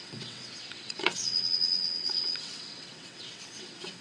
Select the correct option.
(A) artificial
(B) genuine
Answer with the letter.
A